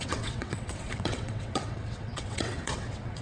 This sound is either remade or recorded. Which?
remade